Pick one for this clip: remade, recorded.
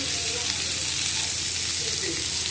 recorded